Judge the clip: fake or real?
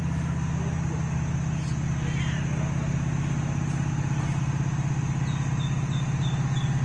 real